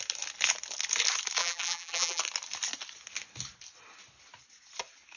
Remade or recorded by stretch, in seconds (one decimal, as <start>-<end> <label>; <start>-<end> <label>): 0.0-1.4 recorded; 1.4-2.2 remade; 2.2-5.2 recorded